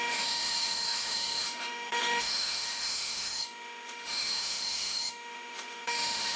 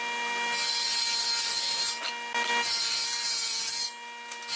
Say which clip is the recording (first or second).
second